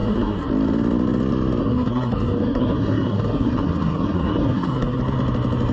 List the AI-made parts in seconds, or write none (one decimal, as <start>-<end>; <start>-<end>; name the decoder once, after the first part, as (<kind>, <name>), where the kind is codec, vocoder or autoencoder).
0.0-0.5 (codec, SNAC); 1.6-5.0